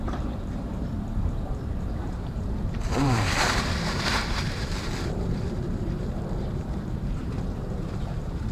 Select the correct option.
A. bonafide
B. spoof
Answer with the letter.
B